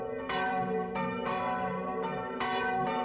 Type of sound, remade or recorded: remade